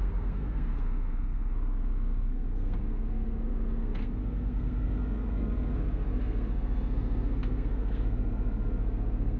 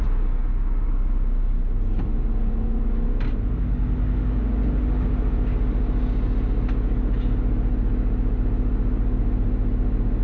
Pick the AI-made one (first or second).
first